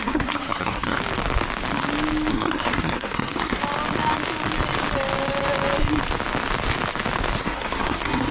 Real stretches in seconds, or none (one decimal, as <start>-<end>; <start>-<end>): 1.0-2.3; 3.6-7.4